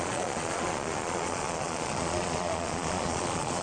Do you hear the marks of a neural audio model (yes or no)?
yes